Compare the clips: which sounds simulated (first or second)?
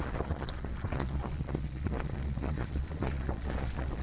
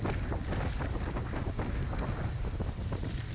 first